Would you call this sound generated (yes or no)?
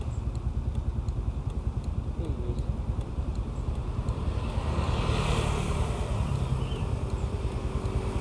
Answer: no